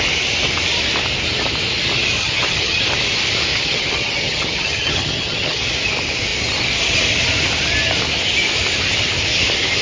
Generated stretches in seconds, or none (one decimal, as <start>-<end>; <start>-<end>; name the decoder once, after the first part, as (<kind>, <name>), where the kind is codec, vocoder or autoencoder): 2.2-2.8 (vocoder, HiFi-GAN); 3.5-5.6